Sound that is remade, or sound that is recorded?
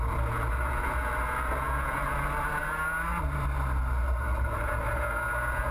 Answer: recorded